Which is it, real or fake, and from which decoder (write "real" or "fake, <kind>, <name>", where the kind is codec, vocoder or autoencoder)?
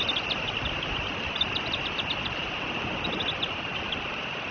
real